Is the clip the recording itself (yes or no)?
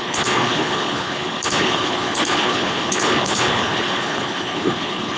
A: no